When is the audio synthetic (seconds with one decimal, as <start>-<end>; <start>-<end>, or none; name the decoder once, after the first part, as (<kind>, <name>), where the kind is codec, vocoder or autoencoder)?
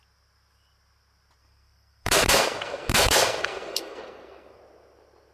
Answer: 1.4-4.6 (codec, SNAC)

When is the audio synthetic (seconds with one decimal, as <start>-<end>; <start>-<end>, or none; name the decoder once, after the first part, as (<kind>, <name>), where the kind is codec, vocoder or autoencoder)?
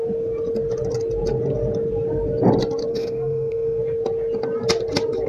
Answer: 2.9-3.8 (codec, SNAC)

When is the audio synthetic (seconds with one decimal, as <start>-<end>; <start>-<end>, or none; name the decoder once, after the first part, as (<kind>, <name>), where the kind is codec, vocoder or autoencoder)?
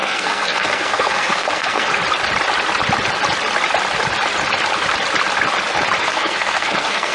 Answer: 0.0-2.0 (codec, SNAC); 6.0-7.1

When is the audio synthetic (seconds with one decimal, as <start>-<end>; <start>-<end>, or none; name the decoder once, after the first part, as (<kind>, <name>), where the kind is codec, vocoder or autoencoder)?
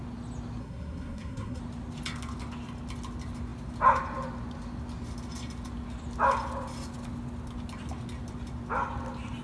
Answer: 0.6-1.6 (codec, SNAC)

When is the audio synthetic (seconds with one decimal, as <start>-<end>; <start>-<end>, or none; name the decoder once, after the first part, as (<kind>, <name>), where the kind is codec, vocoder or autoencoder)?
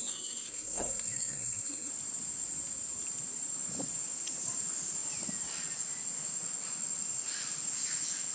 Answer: 0.0-1.9 (codec, SNAC)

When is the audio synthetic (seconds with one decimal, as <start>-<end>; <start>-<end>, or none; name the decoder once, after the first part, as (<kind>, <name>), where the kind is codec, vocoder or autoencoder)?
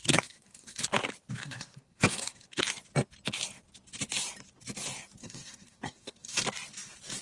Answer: 0.0-0.8 (codec, SNAC); 1.4-2.6; 5.2-6.4